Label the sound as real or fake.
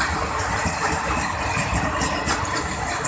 real